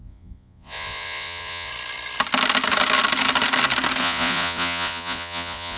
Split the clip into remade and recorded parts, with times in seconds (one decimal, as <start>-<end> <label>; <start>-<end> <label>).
0.0-1.7 remade; 1.7-4.0 recorded; 4.0-5.8 remade